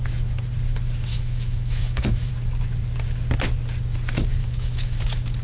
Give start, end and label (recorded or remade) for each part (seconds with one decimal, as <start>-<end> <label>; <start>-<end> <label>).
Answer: 0.0-1.1 recorded; 1.1-2.3 remade; 2.3-4.4 recorded; 4.4-5.0 remade; 5.0-5.4 recorded